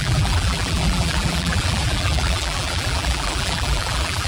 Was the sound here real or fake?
fake